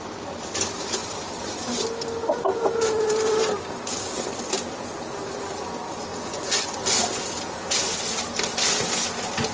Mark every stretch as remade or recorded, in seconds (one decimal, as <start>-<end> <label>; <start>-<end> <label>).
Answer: 0.0-6.1 recorded; 6.1-6.7 remade; 6.7-9.5 recorded